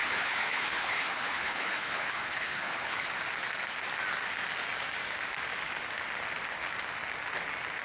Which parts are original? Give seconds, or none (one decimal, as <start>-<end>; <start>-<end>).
3.0-7.8